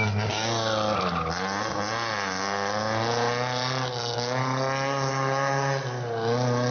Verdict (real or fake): real